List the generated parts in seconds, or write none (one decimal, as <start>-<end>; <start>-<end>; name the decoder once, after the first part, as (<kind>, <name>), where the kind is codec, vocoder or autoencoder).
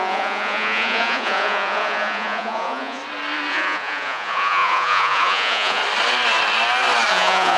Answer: 0.0-3.0 (vocoder, Vocos); 3.5-5.8; 7.1-7.6